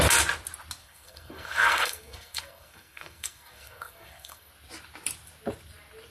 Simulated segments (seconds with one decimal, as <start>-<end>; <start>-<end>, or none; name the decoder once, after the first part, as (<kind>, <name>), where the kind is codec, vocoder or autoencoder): 0.8-4.5 (codec, SNAC)